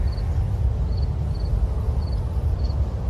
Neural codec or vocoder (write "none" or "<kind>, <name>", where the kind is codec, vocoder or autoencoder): none